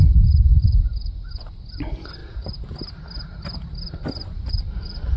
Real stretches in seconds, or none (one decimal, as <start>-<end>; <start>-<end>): 0.0-5.2